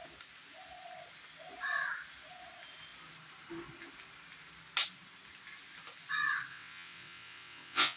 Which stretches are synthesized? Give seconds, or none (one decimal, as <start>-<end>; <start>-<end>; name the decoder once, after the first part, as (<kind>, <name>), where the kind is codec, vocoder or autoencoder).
6.5-8.0 (vocoder, WaveNeXt)